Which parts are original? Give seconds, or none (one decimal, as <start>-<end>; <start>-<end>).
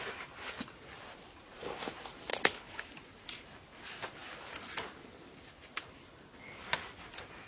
0.0-2.3; 2.8-6.0; 6.6-7.5